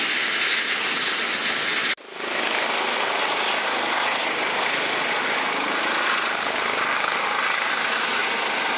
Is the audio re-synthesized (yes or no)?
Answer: no